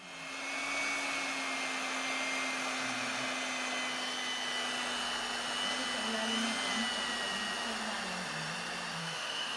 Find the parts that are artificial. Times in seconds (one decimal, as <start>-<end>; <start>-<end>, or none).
9.0-9.6